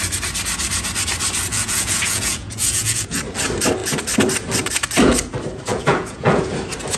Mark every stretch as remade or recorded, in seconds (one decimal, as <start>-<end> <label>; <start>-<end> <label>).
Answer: 0.0-1.5 recorded; 1.5-3.2 remade; 3.2-5.7 recorded; 5.7-6.5 remade; 6.5-7.0 recorded